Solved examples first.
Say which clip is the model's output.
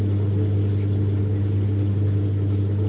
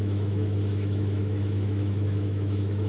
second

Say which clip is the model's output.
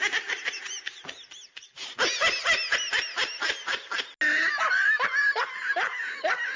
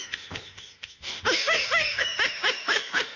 second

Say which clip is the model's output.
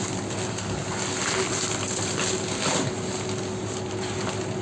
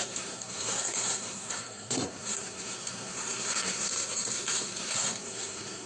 second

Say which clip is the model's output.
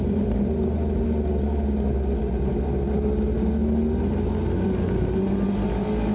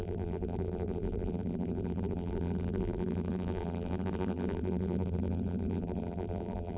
second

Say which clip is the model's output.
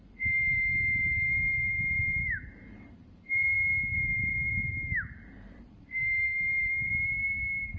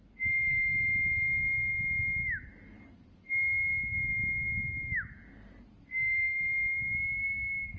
first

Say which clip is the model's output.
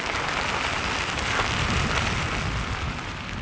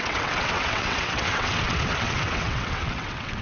second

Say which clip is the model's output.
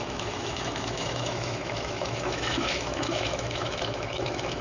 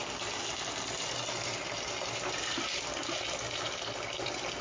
first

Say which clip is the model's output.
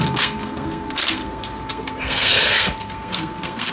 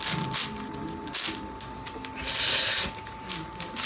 first